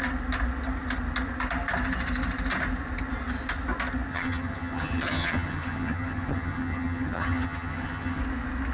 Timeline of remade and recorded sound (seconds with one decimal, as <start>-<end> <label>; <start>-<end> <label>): 0.0-4.1 recorded; 4.1-8.2 remade; 8.2-8.7 recorded